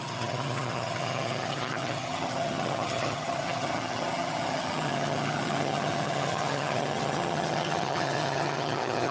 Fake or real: fake